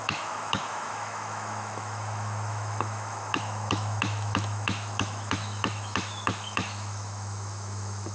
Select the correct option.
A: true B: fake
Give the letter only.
B